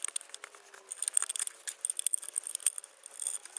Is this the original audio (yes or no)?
yes